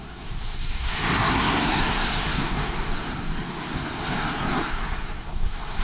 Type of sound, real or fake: fake